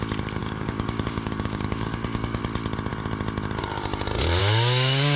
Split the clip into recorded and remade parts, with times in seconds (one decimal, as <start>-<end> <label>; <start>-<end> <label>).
0.0-0.4 recorded; 0.4-2.4 remade; 2.4-4.4 recorded; 4.4-5.2 remade